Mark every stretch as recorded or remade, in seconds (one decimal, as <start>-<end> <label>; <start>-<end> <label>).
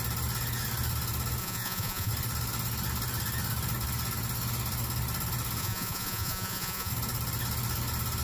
0.0-1.4 recorded; 1.4-2.1 remade; 2.1-5.6 recorded; 5.6-6.9 remade; 6.9-8.2 recorded